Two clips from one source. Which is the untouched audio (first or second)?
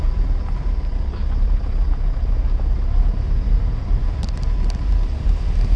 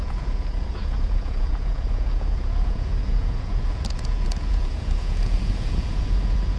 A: first